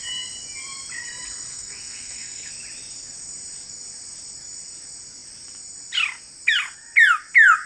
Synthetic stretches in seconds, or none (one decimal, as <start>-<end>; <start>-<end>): 1.5-2.5